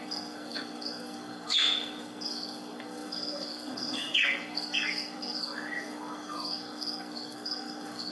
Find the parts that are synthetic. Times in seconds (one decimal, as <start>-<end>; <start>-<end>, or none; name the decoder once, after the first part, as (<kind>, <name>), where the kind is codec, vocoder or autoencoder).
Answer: 0.0-8.1 (codec, SNAC)